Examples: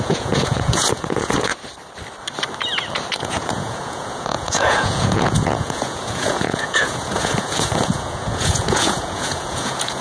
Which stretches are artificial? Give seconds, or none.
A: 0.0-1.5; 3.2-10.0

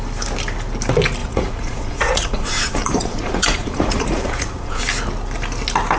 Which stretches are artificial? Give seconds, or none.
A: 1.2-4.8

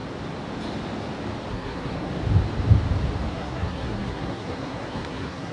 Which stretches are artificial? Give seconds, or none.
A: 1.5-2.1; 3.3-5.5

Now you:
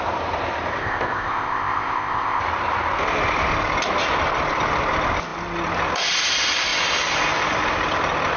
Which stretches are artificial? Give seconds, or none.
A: 0.8-2.4